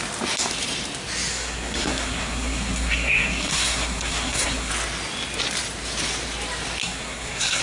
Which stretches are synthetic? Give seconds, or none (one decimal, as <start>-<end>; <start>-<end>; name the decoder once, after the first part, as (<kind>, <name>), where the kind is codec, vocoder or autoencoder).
1.3-4.7 (codec, SNAC); 6.8-7.6